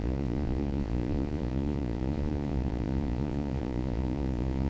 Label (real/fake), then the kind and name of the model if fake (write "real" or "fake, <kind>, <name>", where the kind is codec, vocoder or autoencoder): fake, vocoder, Vocos